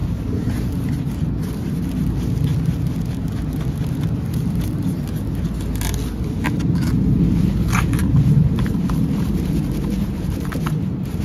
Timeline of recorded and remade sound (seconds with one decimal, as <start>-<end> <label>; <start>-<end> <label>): 0.0-0.5 remade; 0.5-8.0 recorded; 8.0-11.2 remade